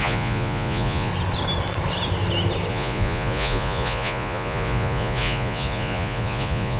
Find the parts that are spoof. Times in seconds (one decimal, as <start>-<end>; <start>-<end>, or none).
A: 0.0-1.1; 2.7-6.8